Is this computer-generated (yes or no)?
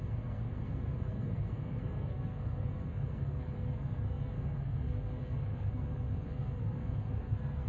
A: yes